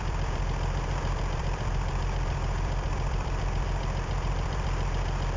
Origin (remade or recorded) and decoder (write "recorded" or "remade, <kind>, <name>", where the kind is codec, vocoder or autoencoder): remade, vocoder, BigVGAN v2